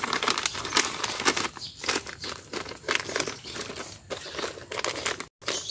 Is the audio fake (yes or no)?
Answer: no